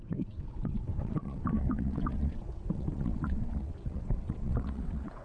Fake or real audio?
fake